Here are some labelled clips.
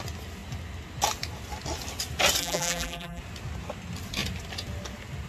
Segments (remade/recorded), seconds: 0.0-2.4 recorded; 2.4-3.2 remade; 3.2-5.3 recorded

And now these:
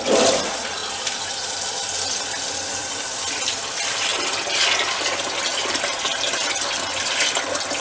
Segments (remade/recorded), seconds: 0.0-0.8 remade; 0.8-2.6 recorded; 2.6-4.1 remade; 4.1-5.6 recorded; 5.6-7.8 remade

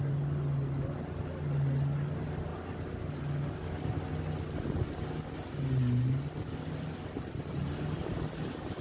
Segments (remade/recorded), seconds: 0.0-8.8 recorded

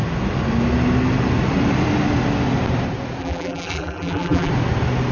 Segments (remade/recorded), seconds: 0.0-3.2 recorded; 3.2-4.5 remade; 4.5-5.1 recorded

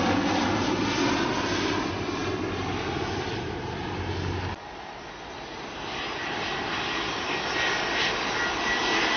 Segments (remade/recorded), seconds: 0.0-9.2 recorded

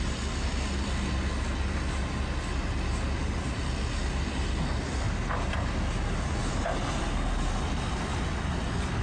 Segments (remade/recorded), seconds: 0.0-6.4 recorded; 6.4-7.0 remade; 7.0-9.0 recorded

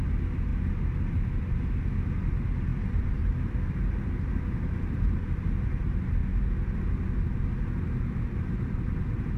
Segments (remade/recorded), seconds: 0.0-2.7 recorded; 2.7-5.8 remade; 5.8-9.4 recorded

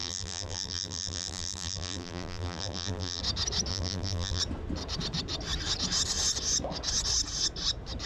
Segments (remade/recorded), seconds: 0.0-3.2 remade; 3.2-3.7 recorded; 3.7-4.4 remade; 4.4-8.1 recorded